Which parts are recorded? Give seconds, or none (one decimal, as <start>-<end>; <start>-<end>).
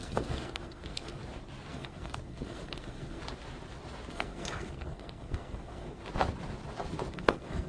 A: 1.2-1.7; 3.2-4.1; 6.0-7.1